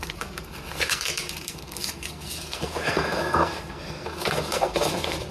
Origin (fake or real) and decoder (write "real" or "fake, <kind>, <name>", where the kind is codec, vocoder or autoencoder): fake, codec, SNAC